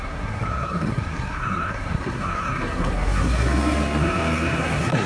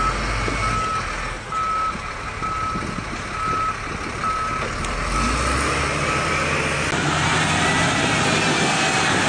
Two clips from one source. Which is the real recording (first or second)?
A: second